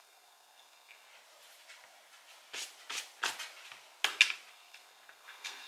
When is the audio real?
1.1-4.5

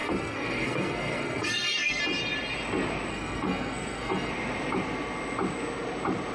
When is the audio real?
2.0-3.1; 4.3-6.3

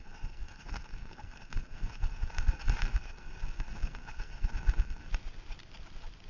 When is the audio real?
5.1-6.3

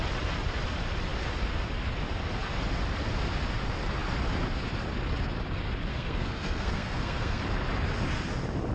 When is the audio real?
0.0-5.9; 7.4-8.7